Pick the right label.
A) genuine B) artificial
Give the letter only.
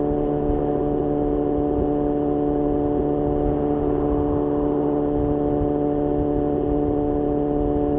A